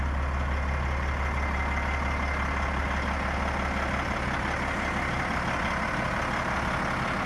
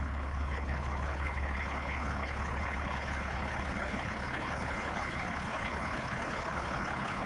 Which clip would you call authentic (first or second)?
first